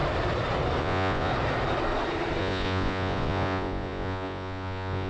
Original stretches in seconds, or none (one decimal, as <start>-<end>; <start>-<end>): 0.0-0.8; 1.3-2.4